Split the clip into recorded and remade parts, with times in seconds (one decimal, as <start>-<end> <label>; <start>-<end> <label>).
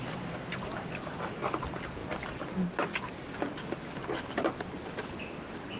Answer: 0.0-5.8 recorded